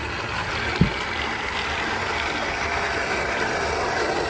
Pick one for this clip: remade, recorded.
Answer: recorded